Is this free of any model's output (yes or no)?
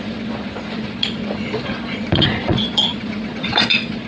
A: no